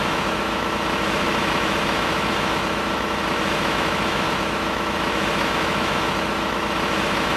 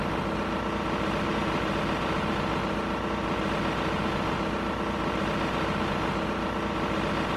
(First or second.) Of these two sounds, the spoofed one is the first